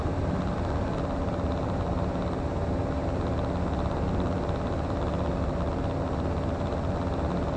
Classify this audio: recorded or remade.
recorded